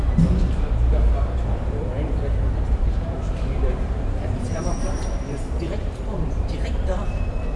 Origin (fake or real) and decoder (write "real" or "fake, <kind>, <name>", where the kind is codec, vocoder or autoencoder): fake, vocoder, BigVGAN v2